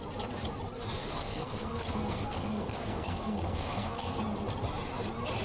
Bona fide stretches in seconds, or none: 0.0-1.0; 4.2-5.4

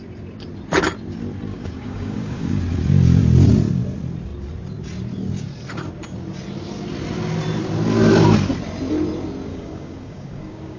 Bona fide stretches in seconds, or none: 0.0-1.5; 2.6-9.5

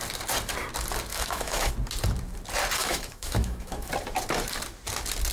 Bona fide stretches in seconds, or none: 0.0-1.1; 1.7-2.8; 3.9-5.3